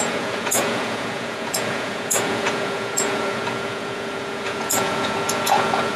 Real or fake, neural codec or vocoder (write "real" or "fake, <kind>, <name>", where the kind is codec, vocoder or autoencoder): fake, vocoder, Vocos